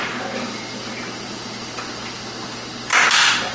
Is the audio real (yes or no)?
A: yes